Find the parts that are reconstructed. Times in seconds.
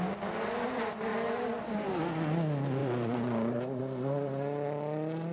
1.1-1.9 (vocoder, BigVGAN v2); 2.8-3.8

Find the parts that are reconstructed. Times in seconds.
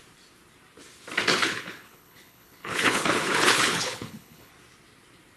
1.3-4.5 (codec, HILCodec)